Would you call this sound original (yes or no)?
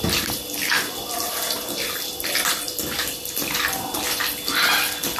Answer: yes